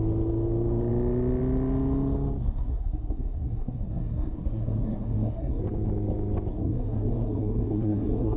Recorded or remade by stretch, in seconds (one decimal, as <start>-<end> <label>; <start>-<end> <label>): 0.0-2.4 recorded; 2.4-5.6 remade; 5.6-6.5 recorded; 6.5-8.4 remade